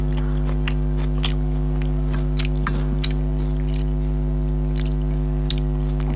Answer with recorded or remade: recorded